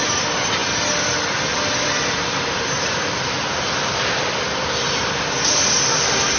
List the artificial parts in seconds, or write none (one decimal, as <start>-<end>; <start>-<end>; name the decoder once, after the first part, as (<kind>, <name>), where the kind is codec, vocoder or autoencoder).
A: none